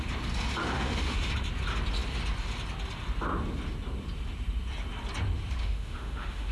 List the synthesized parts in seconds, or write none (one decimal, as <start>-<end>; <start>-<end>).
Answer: 0.6-1.3; 5.6-6.5